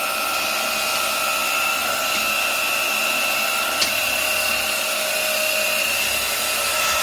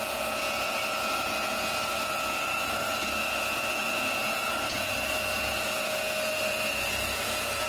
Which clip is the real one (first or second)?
first